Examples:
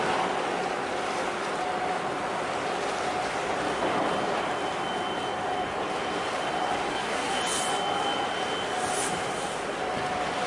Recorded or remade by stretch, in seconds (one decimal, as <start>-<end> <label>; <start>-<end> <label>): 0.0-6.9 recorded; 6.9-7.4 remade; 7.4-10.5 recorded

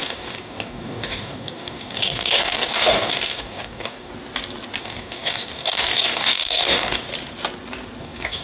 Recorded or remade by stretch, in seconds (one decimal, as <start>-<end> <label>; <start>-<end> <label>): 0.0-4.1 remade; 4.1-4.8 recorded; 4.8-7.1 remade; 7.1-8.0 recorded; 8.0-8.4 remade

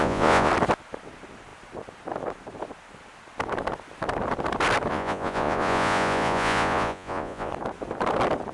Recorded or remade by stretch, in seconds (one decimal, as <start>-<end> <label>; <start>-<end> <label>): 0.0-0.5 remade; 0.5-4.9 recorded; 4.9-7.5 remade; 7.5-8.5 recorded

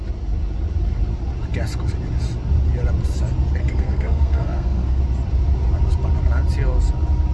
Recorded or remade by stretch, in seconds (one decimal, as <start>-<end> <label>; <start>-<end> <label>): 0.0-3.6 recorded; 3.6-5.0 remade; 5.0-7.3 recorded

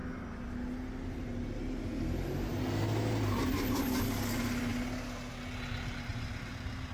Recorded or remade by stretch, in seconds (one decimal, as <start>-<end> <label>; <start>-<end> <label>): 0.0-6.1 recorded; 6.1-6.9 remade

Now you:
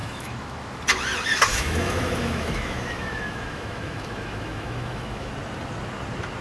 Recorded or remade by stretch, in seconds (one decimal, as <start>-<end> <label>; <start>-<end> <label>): 0.0-0.8 remade; 0.8-1.5 recorded; 1.5-5.3 remade; 5.3-6.4 recorded